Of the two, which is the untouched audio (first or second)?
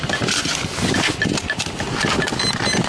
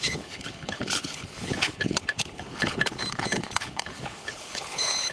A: first